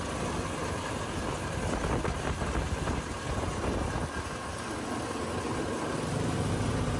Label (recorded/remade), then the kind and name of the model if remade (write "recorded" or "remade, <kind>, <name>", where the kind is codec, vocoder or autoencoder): recorded